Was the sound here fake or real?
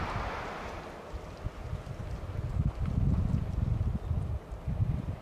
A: real